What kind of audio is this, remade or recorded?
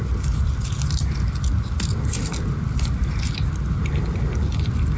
recorded